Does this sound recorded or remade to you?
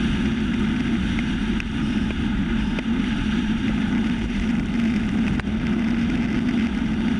recorded